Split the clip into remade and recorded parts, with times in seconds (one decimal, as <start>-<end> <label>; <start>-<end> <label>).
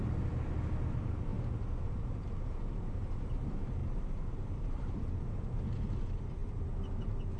0.0-1.3 recorded; 1.3-2.9 remade; 2.9-3.8 recorded; 3.8-5.0 remade; 5.0-7.4 recorded